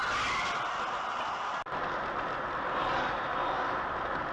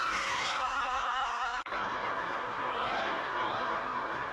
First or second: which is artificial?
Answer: second